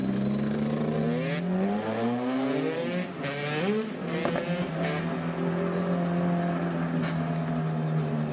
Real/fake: real